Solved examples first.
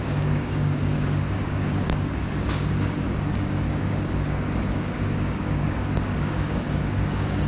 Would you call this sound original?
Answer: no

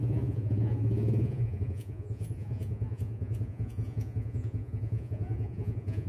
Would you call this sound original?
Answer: no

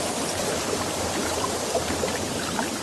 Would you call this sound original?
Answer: yes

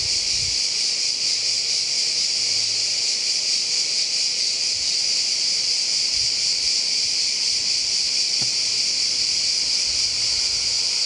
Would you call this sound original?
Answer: yes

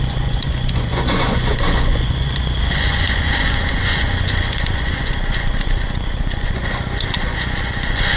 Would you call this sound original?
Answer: no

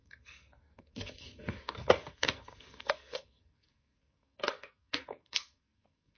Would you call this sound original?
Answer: no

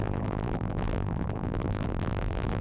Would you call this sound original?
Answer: no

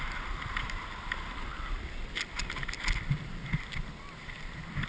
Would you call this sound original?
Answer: yes